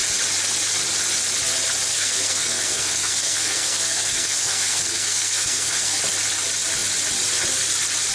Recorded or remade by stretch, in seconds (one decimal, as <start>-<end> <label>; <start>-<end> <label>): 0.0-1.9 recorded; 1.9-6.0 remade; 6.0-8.1 recorded